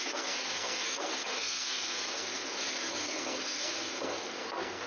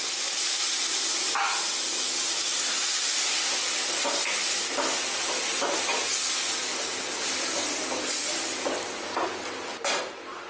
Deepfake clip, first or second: first